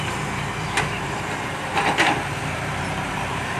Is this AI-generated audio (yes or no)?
yes